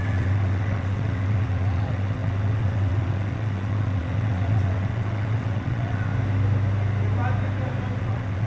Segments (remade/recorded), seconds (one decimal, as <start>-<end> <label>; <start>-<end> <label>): 0.0-6.1 remade; 6.1-8.0 recorded; 8.0-8.5 remade